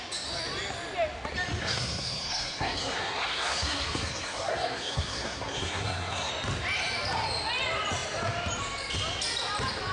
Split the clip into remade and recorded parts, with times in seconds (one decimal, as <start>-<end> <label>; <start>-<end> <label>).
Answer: 0.0-1.6 recorded; 1.6-6.3 remade; 6.3-9.9 recorded